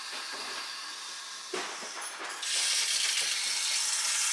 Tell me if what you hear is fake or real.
real